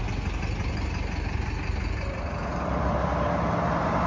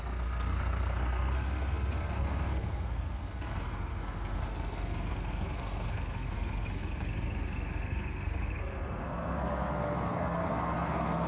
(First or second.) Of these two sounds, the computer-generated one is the second